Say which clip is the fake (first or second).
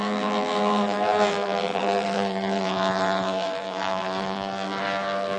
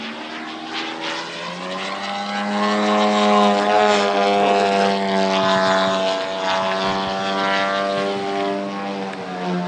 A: first